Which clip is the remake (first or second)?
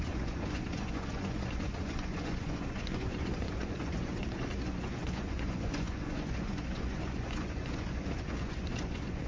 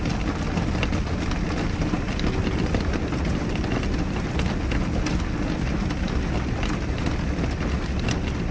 first